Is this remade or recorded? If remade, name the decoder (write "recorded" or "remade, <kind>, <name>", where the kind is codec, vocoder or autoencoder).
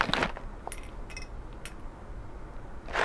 recorded